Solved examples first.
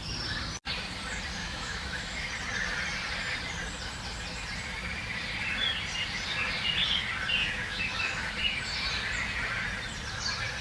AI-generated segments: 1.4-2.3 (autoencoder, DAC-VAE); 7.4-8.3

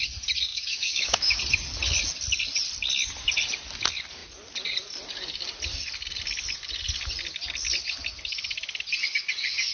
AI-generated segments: 0.5-1.4 (autoencoder, DAC-VAE)

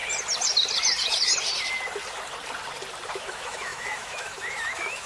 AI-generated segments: 3.1-5.1 (autoencoder, DAC-VAE)

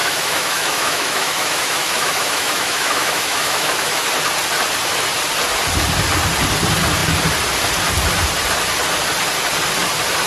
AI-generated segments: 0.0-4.1 (autoencoder, DAC-VAE)